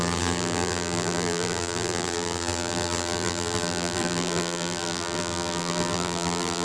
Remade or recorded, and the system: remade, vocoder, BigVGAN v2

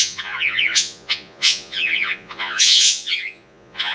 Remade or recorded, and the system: remade, vocoder, Vocos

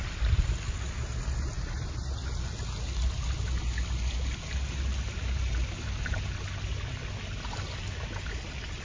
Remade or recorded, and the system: recorded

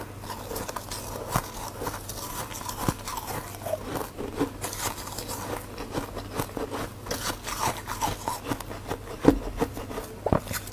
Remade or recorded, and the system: recorded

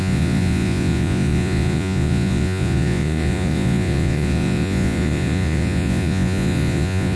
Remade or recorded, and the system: remade, vocoder, Vocos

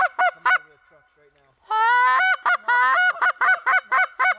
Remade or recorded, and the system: recorded